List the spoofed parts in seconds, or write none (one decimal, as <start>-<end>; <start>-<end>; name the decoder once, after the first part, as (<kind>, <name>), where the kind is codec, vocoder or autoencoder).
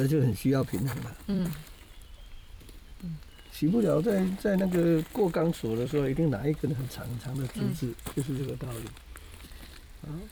0.0-2.9 (vocoder, BigVGAN v2); 5.4-7.6; 8.4-9.1